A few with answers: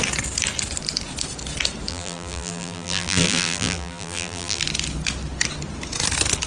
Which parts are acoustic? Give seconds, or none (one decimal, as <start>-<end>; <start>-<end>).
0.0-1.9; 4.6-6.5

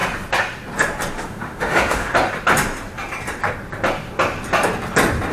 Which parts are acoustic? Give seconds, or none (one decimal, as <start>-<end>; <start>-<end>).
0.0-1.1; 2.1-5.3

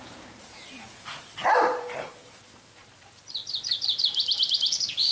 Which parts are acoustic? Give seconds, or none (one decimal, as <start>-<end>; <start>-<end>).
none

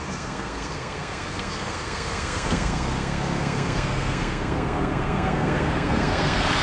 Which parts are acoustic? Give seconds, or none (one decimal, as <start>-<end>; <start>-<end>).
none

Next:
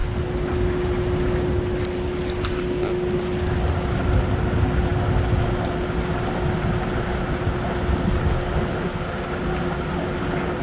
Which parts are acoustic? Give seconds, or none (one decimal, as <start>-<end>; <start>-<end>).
0.0-10.6

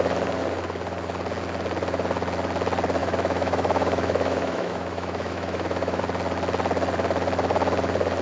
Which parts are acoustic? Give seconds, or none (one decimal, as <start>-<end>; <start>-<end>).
0.0-3.0; 6.0-8.2